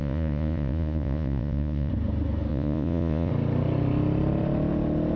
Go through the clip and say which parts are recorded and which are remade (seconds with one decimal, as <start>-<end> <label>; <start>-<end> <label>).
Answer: 0.0-1.9 remade; 1.9-2.5 recorded; 2.5-3.3 remade; 3.3-5.2 recorded